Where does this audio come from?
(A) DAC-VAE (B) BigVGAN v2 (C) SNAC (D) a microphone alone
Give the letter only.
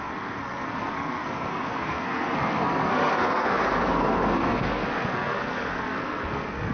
C